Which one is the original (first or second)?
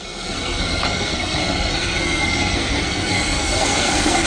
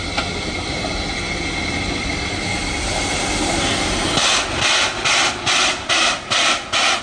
second